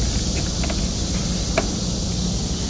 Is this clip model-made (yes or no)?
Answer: no